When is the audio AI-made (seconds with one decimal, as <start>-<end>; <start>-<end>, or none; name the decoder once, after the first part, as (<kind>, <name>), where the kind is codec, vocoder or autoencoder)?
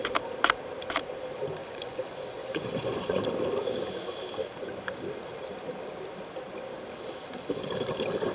1.6-3.2 (vocoder, Vocos)